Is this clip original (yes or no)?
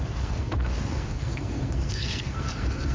no